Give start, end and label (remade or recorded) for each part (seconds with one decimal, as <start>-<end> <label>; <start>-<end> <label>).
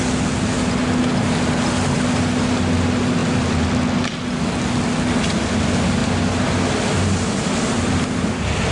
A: 0.0-8.7 recorded